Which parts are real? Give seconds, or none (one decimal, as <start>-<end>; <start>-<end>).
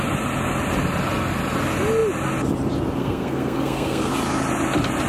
0.0-3.0; 4.1-5.1